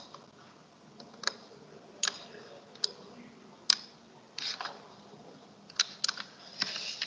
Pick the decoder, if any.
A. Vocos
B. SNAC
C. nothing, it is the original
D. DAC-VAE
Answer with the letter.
C